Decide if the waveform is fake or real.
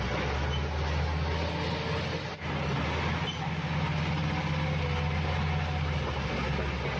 real